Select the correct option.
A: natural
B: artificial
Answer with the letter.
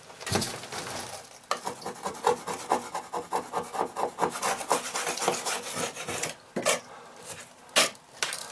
A